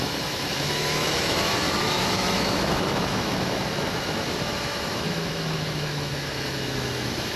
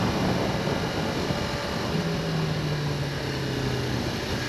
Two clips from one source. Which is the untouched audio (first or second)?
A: second